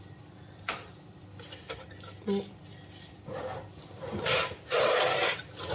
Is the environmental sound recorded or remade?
remade